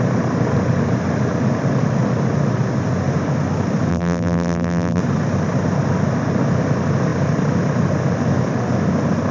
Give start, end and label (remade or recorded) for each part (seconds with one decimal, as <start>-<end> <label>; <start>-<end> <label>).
0.0-3.9 recorded; 3.9-5.0 remade; 5.0-9.3 recorded